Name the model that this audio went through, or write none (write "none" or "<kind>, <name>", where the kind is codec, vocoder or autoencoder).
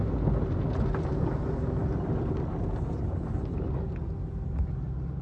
none